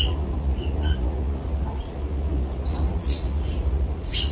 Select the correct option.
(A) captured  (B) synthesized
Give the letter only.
B